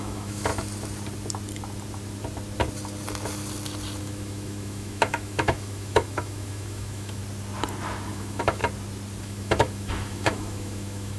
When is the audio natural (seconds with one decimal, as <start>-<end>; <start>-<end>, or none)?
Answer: 0.5-4.0; 7.2-8.1; 8.6-9.2